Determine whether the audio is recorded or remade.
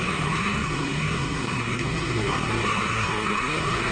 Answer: remade